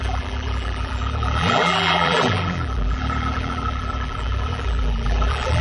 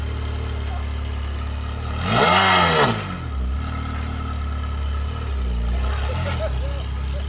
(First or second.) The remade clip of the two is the first